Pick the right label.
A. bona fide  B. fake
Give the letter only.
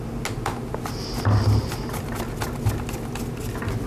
A